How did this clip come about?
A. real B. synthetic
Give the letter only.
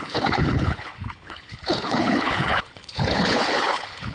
B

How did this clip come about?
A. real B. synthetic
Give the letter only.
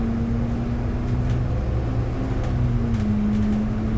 A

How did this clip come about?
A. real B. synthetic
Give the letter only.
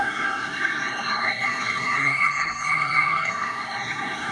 B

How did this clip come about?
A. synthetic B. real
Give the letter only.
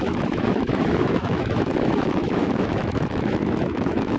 A